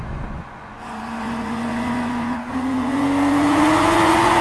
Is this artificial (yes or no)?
yes